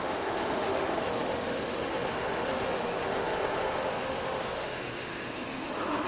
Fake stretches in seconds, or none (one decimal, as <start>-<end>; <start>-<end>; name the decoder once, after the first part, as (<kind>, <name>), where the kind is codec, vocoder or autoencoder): 0.0-6.1 (autoencoder, DAC-VAE)